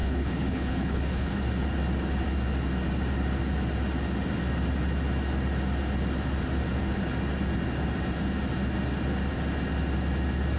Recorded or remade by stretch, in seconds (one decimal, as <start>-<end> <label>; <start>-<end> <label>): 0.0-1.4 remade; 1.4-10.6 recorded